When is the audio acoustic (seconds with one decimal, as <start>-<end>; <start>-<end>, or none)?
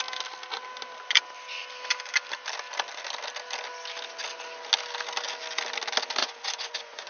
0.0-6.2